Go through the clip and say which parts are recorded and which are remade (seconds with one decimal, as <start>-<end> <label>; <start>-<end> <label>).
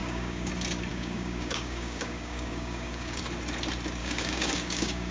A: 0.0-0.5 remade; 0.5-0.9 recorded; 0.9-3.2 remade; 3.2-4.0 recorded; 4.0-5.1 remade